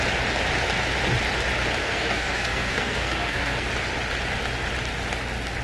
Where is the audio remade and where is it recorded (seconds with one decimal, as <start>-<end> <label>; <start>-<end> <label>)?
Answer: 0.0-1.8 recorded; 1.8-3.7 remade; 3.7-5.6 recorded